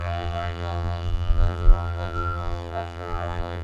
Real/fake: fake